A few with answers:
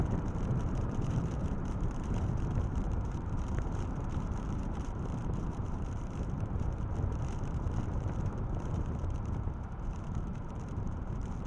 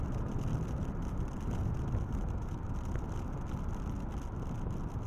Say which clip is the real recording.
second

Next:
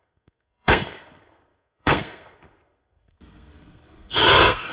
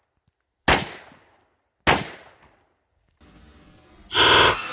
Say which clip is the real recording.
second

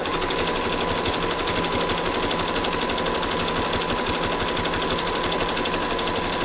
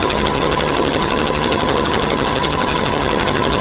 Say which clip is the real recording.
first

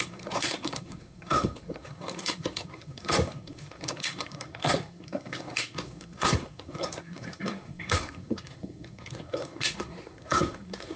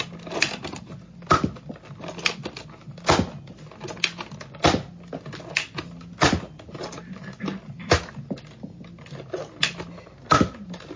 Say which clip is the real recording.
second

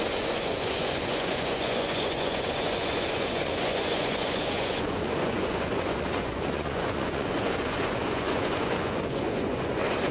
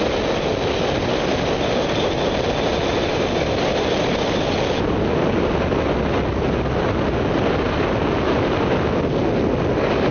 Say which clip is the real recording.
second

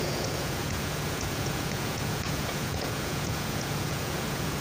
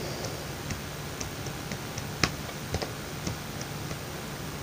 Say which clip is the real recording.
second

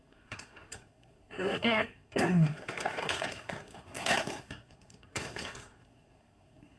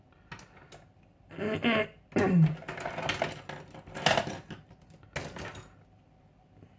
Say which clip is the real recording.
second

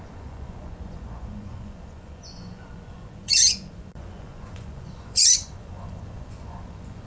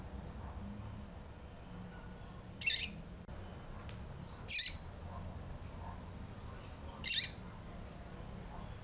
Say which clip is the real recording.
second